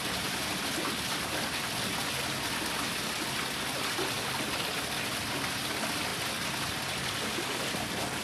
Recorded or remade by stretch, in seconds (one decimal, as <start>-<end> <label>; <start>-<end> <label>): 0.0-8.2 recorded